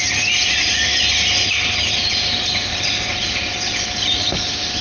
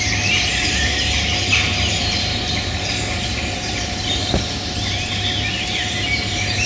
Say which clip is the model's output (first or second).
second